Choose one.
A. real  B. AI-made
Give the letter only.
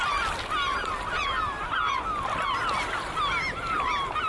A